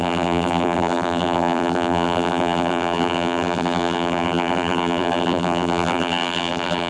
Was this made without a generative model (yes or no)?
no